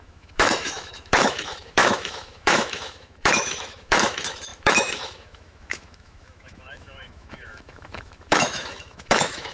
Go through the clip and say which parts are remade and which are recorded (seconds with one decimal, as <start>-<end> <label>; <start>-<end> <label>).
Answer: 0.0-9.5 remade